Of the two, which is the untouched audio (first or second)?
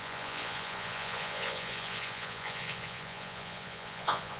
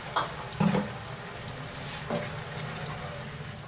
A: second